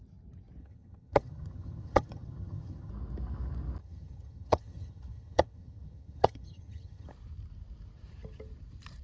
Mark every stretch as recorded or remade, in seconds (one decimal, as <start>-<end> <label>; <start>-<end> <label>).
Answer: 0.0-0.6 recorded; 0.6-2.9 remade; 2.9-3.8 recorded; 3.8-7.1 remade; 7.1-9.0 recorded